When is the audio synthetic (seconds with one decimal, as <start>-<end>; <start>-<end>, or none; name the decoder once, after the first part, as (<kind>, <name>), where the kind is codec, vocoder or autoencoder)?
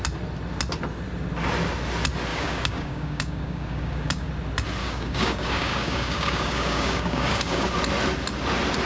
2.3-4.3 (codec, DAC); 4.8-7.7